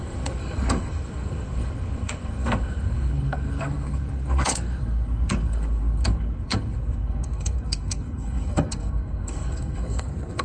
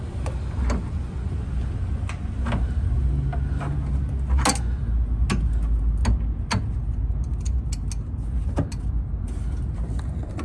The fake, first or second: first